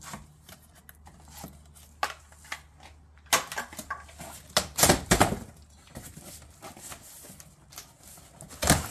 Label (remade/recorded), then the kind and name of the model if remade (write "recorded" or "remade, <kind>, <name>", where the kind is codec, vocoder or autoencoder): recorded